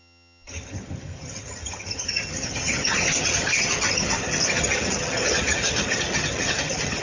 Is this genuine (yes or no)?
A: no